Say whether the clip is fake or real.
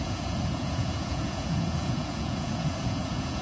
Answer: fake